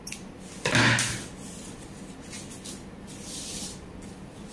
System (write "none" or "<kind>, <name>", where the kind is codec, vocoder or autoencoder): none